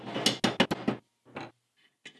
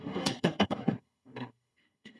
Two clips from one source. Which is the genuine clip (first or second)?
first